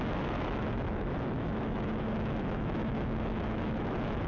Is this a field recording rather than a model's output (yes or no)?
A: no